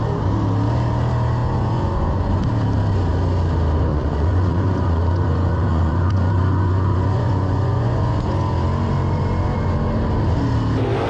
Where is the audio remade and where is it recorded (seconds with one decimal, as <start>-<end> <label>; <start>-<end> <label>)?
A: 0.0-1.4 recorded; 1.4-2.4 remade; 2.4-3.9 recorded; 3.9-8.5 remade; 8.5-11.1 recorded